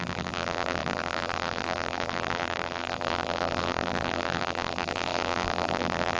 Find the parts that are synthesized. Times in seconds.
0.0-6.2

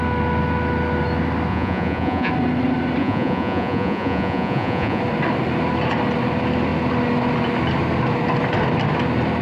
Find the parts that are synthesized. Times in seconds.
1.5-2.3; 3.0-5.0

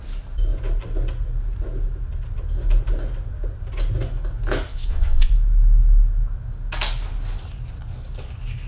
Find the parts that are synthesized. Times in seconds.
4.7-5.3

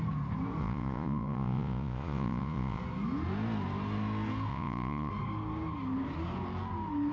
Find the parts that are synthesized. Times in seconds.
0.6-2.8; 4.5-5.1